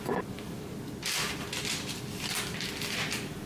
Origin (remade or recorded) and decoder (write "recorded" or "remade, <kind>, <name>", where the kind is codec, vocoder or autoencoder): recorded